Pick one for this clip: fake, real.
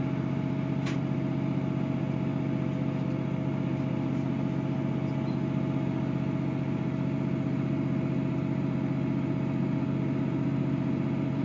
real